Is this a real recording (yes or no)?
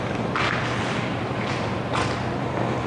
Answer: no